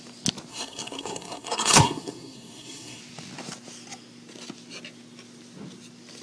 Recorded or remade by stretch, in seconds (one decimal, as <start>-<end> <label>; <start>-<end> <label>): 0.0-0.5 recorded; 0.5-3.0 remade; 3.0-6.2 recorded